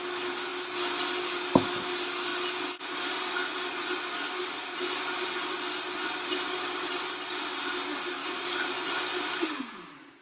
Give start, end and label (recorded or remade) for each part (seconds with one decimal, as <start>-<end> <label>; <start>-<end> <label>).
0.0-8.2 recorded; 8.2-8.9 remade; 8.9-10.2 recorded